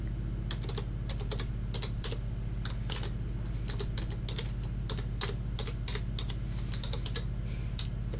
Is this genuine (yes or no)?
yes